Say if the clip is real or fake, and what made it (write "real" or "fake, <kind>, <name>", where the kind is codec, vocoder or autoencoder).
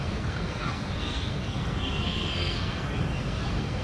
fake, codec, SNAC